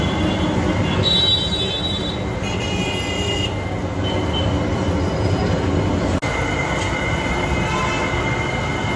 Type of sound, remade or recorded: recorded